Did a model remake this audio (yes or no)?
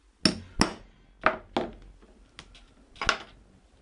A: no